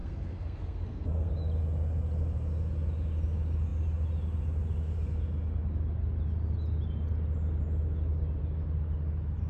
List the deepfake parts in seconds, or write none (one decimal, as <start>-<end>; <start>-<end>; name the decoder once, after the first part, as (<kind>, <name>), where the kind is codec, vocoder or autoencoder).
0.0-1.3 (codec, SNAC)